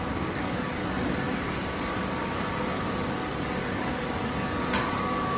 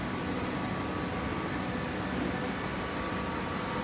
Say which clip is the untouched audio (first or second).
second